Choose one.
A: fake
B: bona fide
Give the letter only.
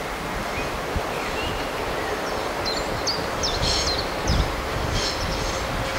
B